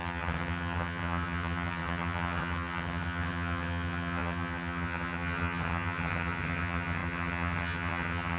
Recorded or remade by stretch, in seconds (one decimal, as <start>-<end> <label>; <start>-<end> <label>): 0.0-8.4 remade